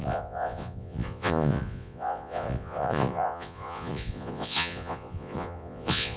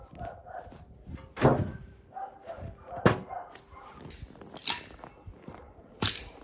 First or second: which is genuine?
second